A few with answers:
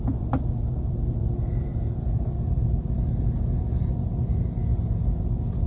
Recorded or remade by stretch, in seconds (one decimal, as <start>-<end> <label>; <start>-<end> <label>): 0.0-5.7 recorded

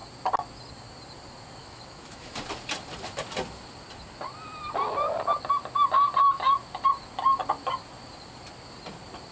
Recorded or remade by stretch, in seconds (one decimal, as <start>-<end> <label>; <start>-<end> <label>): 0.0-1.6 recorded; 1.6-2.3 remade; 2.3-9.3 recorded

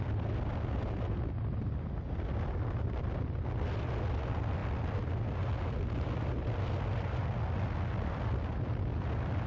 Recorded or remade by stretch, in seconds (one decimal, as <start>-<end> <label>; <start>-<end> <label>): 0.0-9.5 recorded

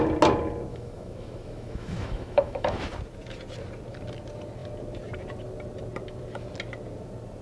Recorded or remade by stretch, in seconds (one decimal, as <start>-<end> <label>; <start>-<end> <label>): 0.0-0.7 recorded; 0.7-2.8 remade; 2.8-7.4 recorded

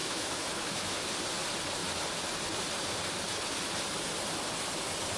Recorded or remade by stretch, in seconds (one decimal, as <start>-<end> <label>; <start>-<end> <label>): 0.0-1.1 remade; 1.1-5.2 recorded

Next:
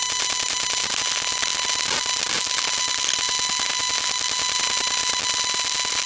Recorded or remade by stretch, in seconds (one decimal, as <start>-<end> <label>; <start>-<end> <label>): 0.0-6.1 recorded

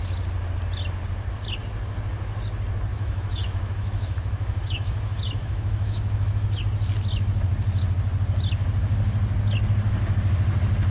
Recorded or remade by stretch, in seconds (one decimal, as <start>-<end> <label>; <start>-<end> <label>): 0.0-2.9 recorded; 2.9-6.6 remade; 6.6-10.9 recorded

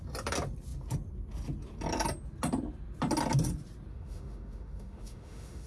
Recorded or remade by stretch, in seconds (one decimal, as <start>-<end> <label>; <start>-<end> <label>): 0.0-3.9 recorded; 3.9-5.7 remade